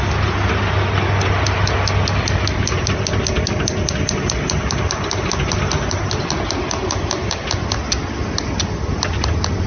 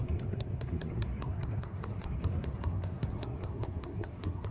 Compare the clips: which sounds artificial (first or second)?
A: second